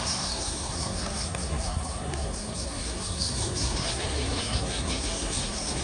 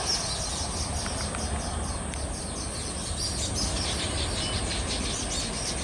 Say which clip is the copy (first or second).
first